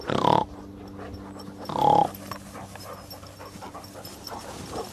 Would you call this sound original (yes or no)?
yes